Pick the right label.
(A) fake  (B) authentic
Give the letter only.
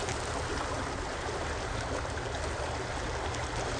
B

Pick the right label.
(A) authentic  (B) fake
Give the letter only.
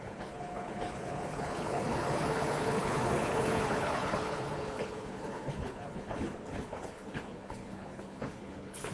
B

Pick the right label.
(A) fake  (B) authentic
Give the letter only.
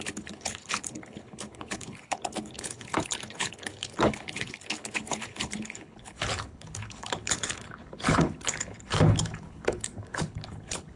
A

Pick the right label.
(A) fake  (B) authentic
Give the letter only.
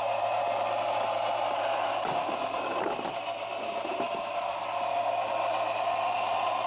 B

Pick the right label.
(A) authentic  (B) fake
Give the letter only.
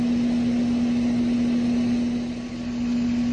A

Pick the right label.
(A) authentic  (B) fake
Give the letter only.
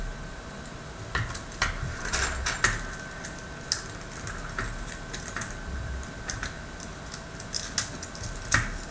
A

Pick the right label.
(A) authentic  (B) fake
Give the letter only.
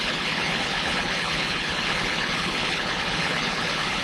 B